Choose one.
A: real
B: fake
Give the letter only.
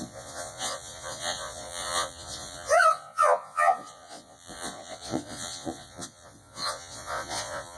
B